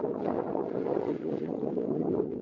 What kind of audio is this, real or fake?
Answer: fake